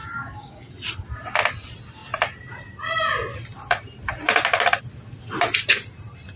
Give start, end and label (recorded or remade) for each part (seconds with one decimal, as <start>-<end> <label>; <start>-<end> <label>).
0.0-0.7 remade; 0.7-6.4 recorded